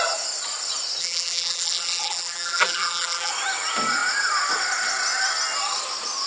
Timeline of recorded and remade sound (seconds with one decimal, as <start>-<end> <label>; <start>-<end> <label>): 0.0-1.0 recorded; 1.0-3.3 remade; 3.3-6.3 recorded